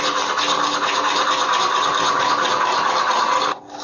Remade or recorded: recorded